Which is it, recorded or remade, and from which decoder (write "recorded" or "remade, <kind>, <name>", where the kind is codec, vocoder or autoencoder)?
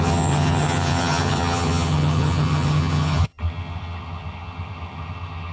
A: remade, vocoder, HiFi-GAN